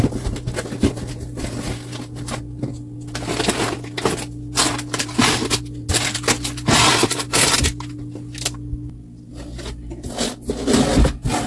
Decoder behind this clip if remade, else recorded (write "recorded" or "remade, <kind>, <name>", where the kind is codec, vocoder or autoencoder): recorded